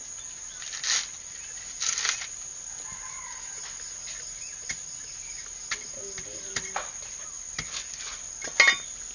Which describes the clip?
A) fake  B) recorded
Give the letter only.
B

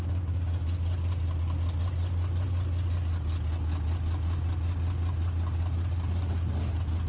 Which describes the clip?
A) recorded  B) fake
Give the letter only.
A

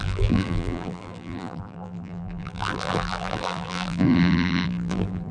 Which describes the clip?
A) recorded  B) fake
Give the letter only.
B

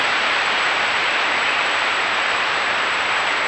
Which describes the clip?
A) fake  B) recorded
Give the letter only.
A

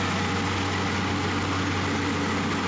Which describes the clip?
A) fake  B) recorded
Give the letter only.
B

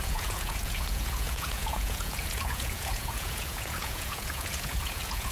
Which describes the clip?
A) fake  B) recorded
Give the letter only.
A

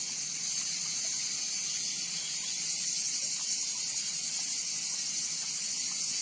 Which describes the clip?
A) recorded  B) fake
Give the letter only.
A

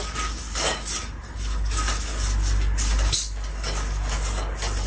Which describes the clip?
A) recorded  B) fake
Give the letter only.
B